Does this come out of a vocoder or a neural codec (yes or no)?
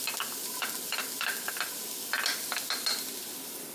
no